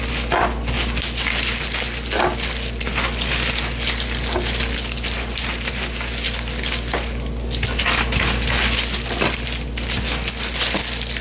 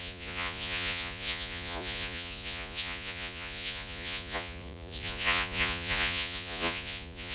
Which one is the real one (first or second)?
first